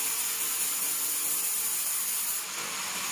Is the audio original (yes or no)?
yes